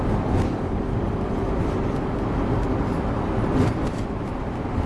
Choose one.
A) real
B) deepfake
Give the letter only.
B